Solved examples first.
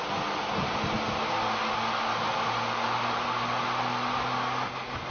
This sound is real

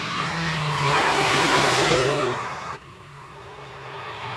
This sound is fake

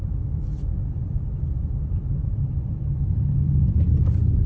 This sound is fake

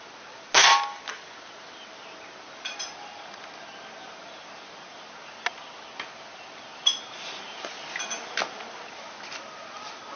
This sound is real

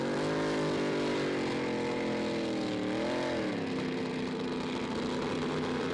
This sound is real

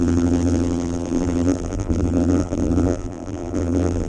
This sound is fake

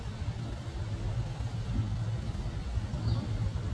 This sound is real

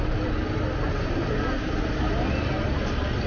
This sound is real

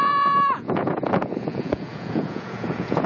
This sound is fake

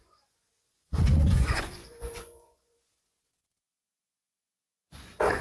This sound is fake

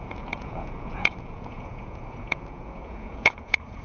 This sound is fake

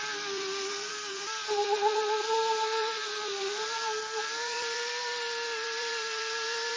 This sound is fake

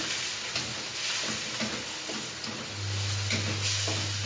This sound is real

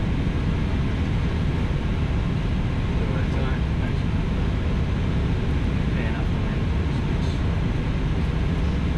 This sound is real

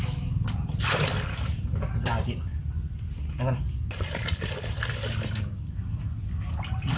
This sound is real